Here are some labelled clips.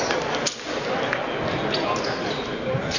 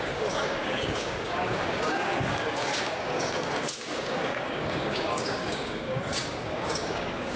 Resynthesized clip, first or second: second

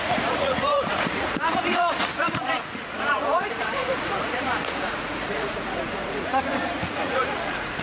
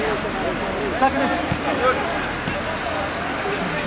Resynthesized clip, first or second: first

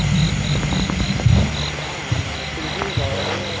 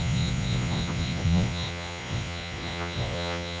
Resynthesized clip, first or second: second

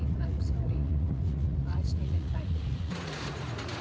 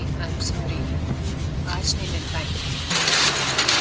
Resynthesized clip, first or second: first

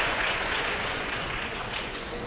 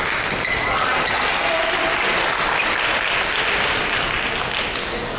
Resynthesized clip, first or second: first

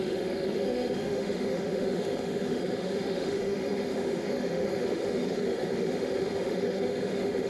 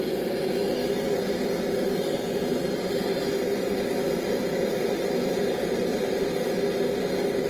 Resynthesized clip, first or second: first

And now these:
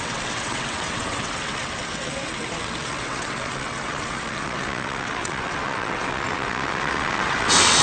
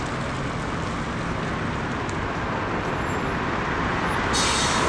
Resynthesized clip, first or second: first